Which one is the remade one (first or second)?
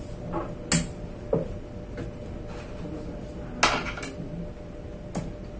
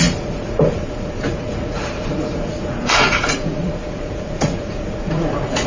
second